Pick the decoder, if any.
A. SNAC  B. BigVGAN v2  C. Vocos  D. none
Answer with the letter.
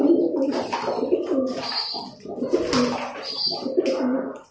D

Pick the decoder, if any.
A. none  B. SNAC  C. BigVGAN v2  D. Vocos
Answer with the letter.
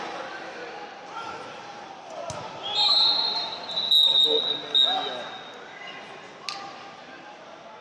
A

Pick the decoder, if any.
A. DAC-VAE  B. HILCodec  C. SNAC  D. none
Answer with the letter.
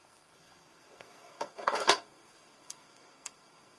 C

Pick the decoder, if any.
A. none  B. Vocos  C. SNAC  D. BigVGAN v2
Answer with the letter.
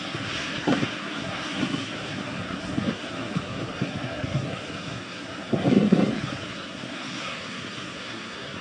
C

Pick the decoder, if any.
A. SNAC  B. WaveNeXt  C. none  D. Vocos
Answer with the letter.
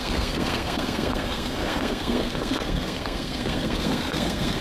A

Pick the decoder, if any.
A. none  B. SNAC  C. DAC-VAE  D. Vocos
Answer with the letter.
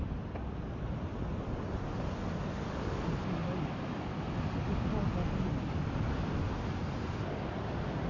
A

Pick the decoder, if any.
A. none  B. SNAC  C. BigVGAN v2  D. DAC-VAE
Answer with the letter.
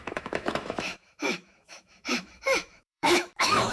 D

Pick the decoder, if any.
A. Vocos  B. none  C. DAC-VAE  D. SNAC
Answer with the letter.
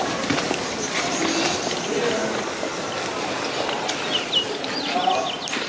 B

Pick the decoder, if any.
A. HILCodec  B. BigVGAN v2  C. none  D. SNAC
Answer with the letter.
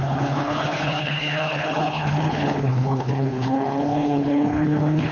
A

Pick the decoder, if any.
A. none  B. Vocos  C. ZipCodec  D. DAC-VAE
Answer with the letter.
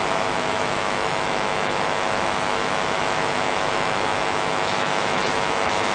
D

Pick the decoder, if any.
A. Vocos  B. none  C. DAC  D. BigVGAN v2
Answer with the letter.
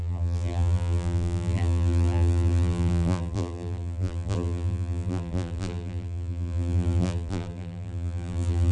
D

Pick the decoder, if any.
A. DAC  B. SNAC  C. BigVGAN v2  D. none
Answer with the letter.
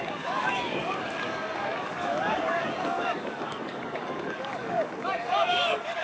A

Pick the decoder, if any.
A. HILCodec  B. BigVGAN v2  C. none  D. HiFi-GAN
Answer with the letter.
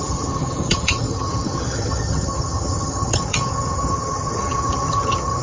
D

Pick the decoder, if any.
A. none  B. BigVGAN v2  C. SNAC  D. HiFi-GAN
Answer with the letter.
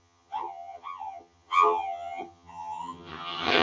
D